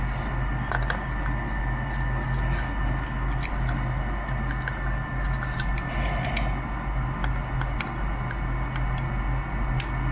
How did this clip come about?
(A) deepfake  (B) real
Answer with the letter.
B